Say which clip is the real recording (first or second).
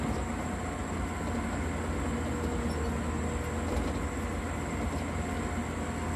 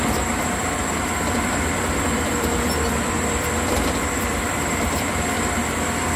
first